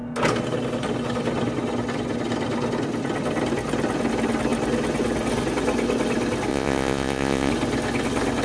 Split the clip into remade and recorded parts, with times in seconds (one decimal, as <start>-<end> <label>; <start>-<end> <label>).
0.0-6.5 recorded; 6.5-7.5 remade; 7.5-8.4 recorded